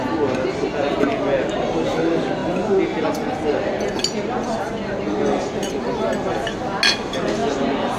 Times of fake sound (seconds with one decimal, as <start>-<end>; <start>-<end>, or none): 0.0-0.9